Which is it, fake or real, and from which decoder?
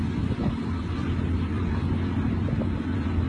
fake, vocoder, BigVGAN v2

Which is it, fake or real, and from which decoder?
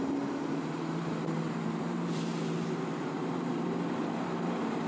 fake, vocoder, BigVGAN v2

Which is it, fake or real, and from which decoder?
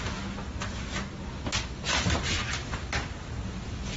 real